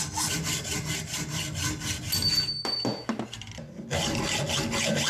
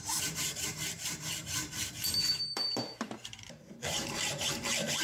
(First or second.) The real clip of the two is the first